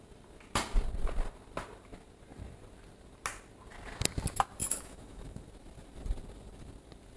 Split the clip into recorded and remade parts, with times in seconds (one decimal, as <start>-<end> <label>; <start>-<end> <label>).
0.0-4.6 recorded; 4.6-5.4 remade; 5.4-7.2 recorded

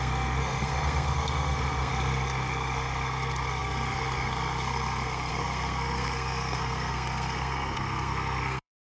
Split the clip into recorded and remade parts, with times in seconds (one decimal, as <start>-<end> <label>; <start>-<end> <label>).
0.0-8.9 remade

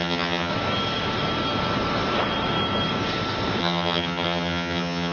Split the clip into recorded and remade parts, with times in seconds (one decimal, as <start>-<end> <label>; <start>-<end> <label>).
0.0-0.5 remade; 0.5-3.6 recorded; 3.6-5.1 remade

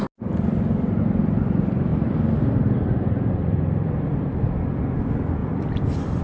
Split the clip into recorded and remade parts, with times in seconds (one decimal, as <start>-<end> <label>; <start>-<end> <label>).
0.0-1.9 recorded; 1.9-4.8 remade; 4.8-5.4 recorded; 5.4-6.2 remade

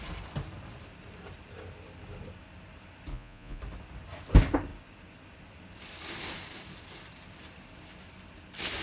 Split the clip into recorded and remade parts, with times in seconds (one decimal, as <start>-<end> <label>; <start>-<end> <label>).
0.0-3.1 recorded; 3.1-3.6 remade; 3.6-8.8 recorded

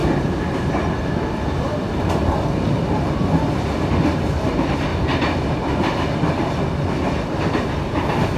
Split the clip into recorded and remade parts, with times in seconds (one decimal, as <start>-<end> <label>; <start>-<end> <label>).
0.0-8.4 recorded